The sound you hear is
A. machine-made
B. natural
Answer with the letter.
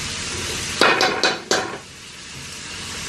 B